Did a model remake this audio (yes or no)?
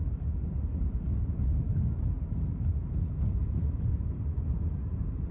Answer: yes